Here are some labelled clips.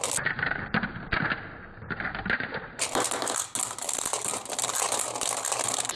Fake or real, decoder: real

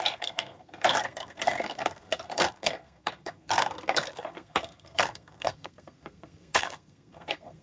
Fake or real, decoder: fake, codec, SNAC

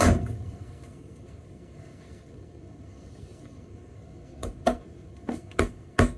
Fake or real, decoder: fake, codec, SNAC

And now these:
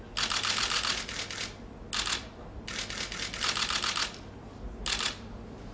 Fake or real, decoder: real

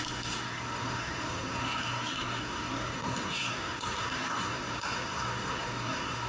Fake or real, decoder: fake, codec, SNAC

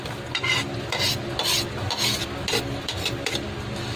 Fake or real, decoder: real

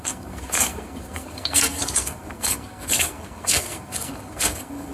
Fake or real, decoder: fake, codec, SNAC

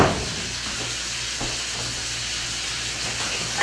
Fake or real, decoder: real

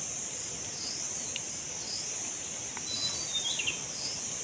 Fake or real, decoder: real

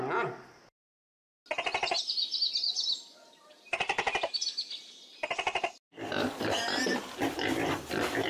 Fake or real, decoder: real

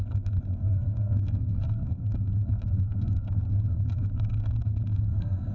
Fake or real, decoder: fake, codec, SNAC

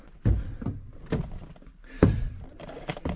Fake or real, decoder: real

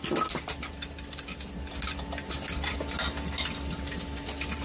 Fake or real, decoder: real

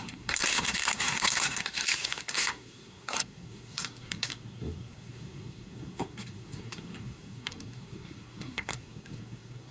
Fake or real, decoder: fake, codec, SNAC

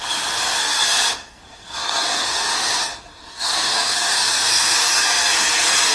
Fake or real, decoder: fake, codec, SNAC